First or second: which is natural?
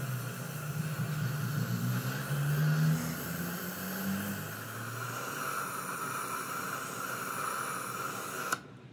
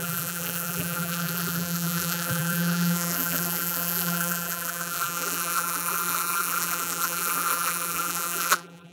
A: first